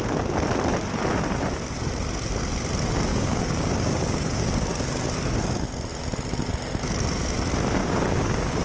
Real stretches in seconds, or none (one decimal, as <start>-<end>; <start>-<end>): 0.0-3.1; 4.5-7.8